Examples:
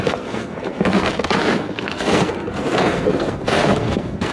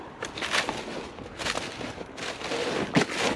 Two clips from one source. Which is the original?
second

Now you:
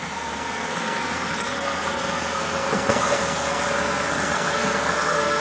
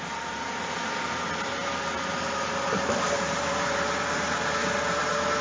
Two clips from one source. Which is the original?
second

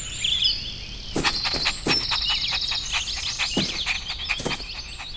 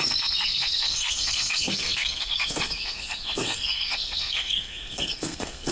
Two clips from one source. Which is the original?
first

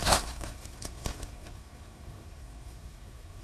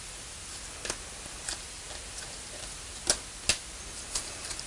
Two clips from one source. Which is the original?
second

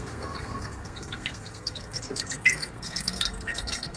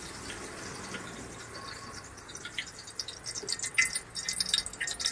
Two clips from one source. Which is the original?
second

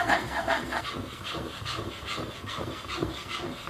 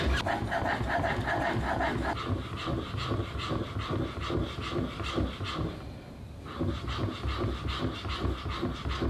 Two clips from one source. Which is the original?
second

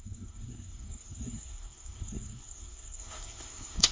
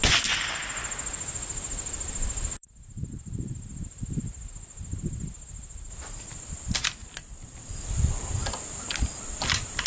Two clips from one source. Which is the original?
second